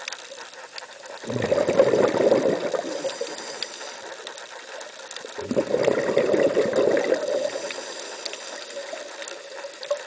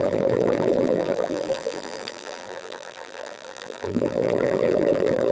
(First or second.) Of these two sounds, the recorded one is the first